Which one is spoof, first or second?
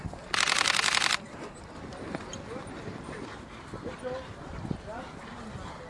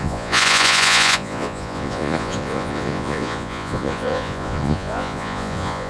second